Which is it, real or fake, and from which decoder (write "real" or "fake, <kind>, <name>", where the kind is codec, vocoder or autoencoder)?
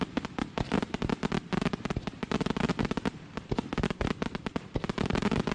fake, vocoder, BigVGAN v2